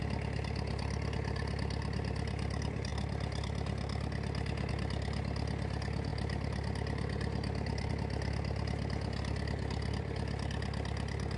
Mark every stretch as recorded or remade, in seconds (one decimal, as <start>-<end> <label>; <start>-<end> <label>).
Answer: 0.0-11.4 recorded